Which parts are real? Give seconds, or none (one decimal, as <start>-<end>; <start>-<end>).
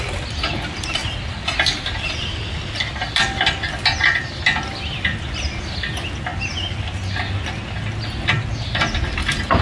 0.0-6.3; 6.8-9.6